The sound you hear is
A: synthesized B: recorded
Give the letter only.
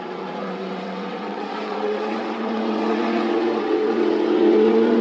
A